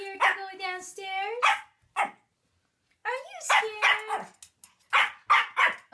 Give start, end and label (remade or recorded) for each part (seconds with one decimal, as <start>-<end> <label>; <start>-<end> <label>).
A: 0.0-5.9 recorded